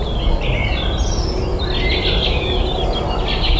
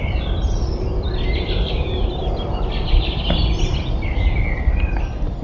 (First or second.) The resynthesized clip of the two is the second